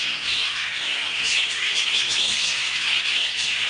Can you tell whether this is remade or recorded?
remade